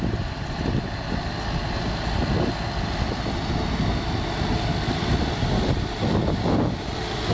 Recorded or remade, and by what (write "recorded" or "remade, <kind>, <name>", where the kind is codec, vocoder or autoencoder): recorded